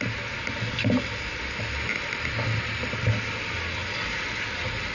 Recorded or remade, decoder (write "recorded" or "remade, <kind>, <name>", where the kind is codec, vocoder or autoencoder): recorded